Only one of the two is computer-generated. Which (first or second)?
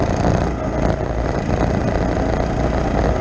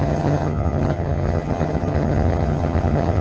second